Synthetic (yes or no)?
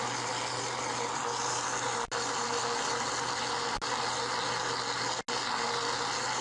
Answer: no